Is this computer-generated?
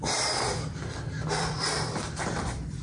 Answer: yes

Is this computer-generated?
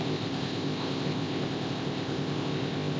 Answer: yes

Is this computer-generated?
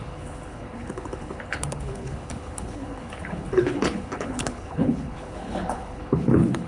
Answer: yes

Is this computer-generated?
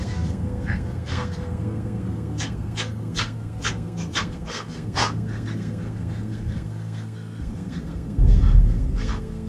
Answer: yes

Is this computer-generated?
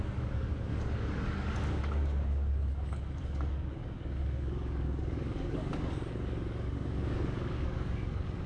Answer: yes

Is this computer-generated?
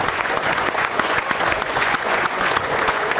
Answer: yes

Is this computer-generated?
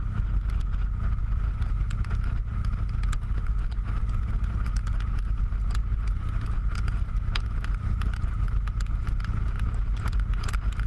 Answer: no